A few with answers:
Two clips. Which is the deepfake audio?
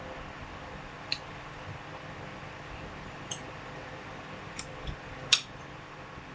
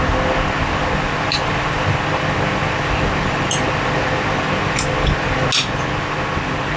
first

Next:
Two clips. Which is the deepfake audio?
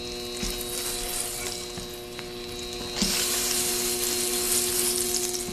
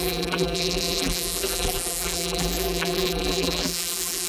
second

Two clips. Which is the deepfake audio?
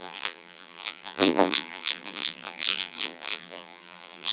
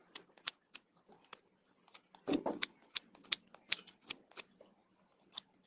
first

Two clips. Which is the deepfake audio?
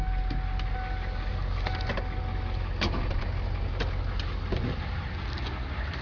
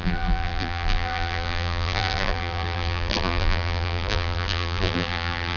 second